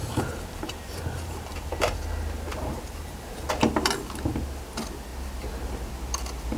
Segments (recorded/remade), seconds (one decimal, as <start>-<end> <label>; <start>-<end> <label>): 0.0-2.0 remade; 2.0-2.5 recorded; 2.5-3.5 remade; 3.5-6.6 recorded